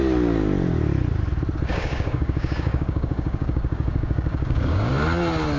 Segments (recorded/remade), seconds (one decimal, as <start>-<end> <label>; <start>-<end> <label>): 0.0-1.7 recorded; 1.7-4.9 remade; 4.9-5.6 recorded